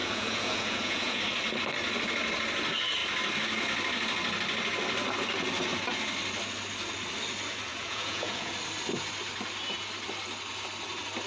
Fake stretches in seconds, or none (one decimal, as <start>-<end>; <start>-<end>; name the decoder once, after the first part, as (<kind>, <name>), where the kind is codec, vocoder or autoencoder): 0.0-1.2 (vocoder, Vocos); 7.7-8.5